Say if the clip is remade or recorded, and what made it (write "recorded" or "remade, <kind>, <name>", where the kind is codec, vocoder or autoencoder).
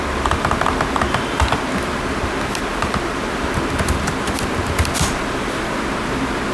recorded